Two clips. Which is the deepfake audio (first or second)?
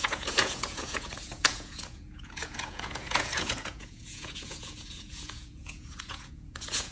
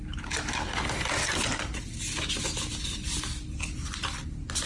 first